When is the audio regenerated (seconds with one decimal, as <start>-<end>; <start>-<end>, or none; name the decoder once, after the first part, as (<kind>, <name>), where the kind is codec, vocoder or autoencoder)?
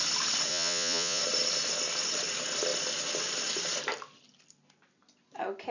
0.5-1.2 (vocoder, Vocos)